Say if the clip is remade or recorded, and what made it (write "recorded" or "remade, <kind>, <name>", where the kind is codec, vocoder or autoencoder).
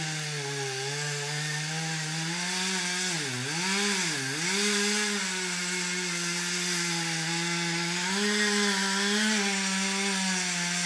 recorded